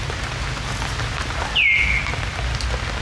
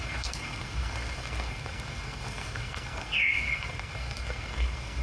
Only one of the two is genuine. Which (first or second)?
first